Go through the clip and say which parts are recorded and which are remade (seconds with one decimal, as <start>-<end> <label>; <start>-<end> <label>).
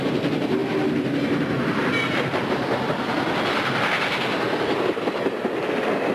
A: 0.0-6.1 recorded